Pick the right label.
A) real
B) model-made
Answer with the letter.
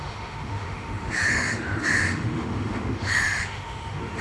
B